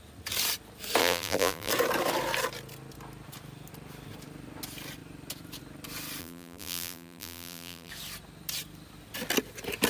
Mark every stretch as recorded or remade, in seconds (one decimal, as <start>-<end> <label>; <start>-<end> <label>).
0.0-1.0 recorded; 1.0-1.7 remade; 1.7-6.2 recorded; 6.2-7.9 remade; 7.9-9.9 recorded